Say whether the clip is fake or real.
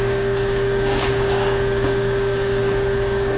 fake